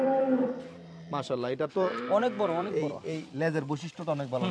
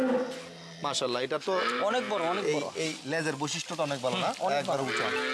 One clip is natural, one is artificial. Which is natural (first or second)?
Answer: second